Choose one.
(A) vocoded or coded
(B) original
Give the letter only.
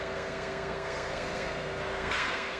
A